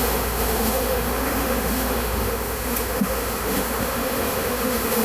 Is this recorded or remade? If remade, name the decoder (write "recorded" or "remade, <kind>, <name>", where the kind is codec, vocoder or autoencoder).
remade, autoencoder, DAC-VAE